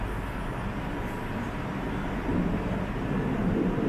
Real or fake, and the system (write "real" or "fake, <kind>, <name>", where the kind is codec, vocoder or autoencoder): real